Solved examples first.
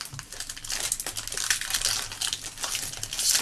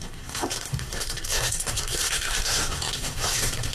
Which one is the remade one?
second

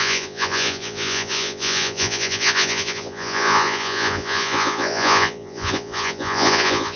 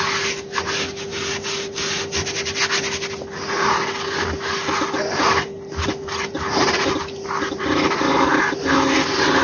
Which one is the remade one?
first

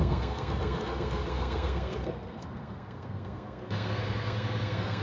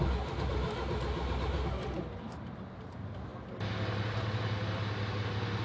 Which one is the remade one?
first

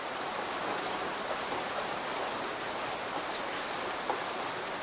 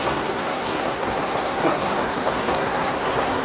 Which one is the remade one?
second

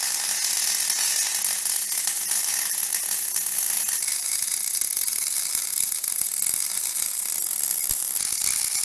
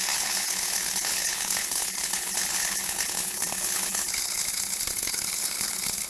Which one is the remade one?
second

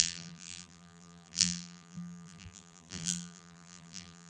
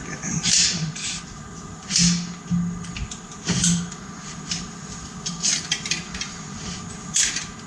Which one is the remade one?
first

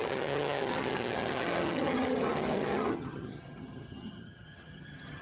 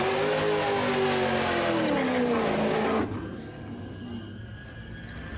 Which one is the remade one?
first